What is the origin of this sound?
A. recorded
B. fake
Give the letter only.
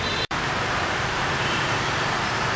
B